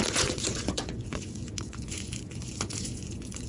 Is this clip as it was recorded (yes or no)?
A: no